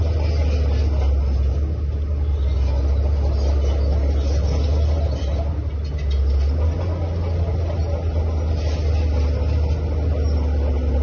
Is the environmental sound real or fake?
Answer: real